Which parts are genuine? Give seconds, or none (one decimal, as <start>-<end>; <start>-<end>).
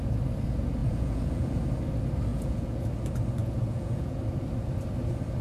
0.0-0.8; 1.6-2.3; 2.9-3.4; 4.2-5.4